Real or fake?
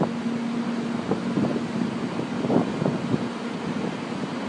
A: real